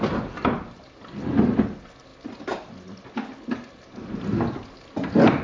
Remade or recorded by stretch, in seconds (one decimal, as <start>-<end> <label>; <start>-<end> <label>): 0.0-5.4 recorded